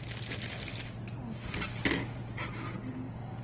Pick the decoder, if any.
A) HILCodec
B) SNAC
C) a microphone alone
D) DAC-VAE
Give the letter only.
C